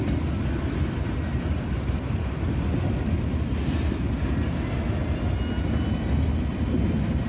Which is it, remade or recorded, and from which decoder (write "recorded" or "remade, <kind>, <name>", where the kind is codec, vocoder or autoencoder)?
recorded